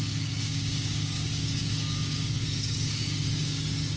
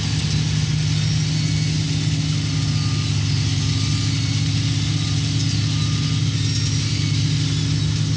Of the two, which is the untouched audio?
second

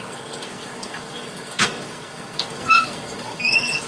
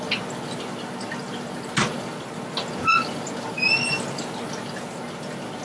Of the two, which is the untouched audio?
second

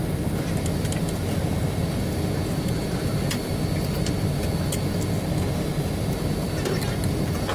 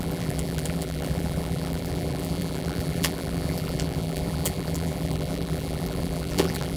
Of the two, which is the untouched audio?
first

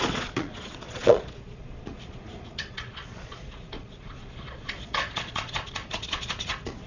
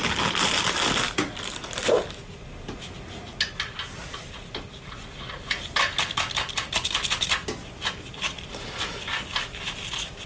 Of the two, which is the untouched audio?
second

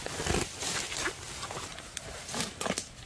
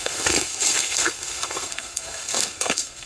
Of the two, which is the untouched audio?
first